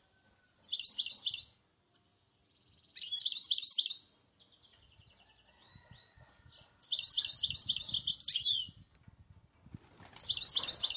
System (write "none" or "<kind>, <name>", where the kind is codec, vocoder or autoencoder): none